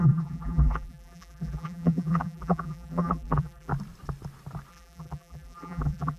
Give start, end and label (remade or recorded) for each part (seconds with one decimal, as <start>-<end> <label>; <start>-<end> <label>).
0.0-3.7 remade; 3.7-4.7 recorded; 4.7-6.2 remade